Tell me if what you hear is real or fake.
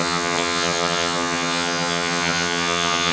fake